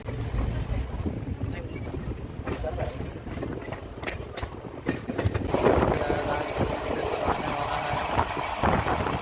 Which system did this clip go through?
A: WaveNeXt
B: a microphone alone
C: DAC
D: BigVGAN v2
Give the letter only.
B